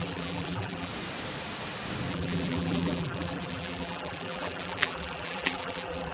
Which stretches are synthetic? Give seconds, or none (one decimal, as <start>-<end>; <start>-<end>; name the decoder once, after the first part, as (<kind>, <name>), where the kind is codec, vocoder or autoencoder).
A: 0.0-0.9 (vocoder, BigVGAN v2); 2.1-6.1